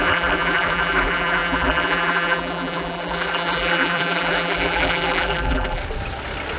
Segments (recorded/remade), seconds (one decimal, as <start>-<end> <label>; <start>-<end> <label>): 0.0-5.8 remade; 5.8-6.6 recorded